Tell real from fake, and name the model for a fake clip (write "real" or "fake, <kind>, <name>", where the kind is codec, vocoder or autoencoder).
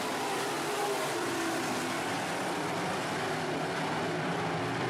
real